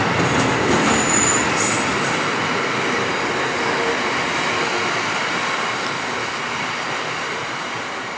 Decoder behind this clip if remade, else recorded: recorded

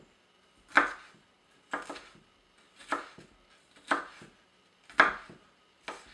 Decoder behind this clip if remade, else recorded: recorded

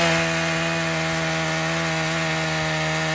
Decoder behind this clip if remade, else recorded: recorded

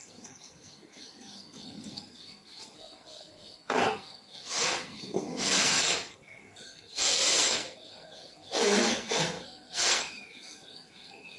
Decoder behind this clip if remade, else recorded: remade, codec, SNAC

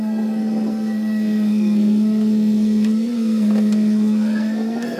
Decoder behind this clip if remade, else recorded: remade, codec, SNAC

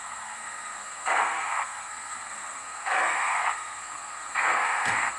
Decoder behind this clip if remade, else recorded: remade, codec, SNAC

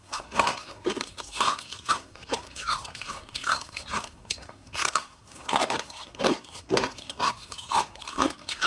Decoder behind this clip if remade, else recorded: remade, codec, SNAC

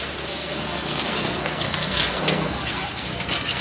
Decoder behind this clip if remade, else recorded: remade, codec, SNAC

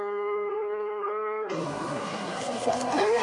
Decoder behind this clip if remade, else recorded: remade, codec, SNAC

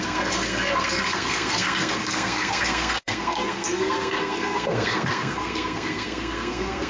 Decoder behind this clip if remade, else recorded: remade, codec, SNAC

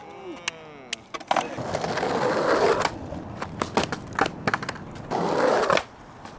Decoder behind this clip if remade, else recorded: recorded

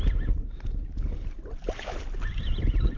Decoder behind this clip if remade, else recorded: recorded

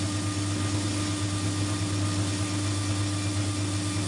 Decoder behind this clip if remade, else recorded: recorded